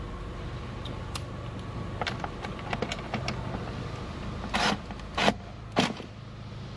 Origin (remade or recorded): recorded